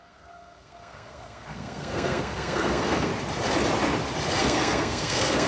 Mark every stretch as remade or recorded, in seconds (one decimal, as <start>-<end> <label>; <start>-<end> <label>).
0.0-3.1 remade; 3.1-4.4 recorded; 4.4-5.5 remade